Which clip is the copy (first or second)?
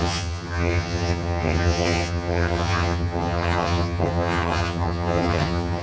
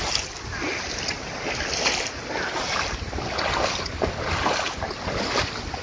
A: first